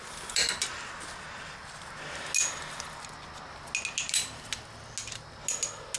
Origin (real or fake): real